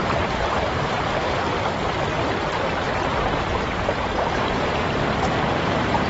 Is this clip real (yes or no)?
no